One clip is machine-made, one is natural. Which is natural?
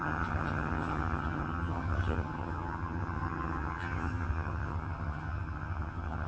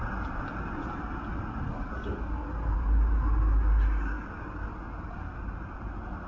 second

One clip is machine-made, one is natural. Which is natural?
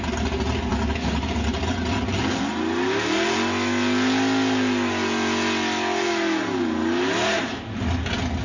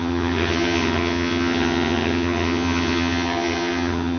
first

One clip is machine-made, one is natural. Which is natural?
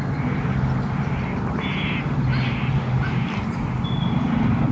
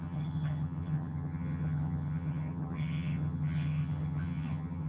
first